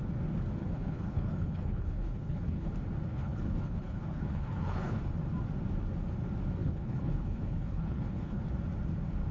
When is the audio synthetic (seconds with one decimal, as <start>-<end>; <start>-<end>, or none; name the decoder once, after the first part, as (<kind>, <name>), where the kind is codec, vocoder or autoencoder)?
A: 0.6-2.7 (codec, HILCodec); 3.1-5.0; 6.6-8.4